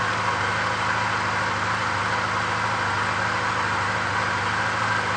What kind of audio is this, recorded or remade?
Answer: recorded